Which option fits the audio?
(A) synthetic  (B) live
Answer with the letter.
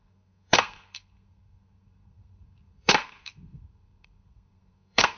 A